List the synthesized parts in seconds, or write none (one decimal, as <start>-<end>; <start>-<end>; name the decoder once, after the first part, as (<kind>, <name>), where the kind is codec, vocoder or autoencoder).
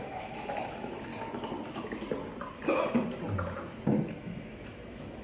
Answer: 0.0-1.1 (autoencoder, DAC-VAE); 4.2-5.2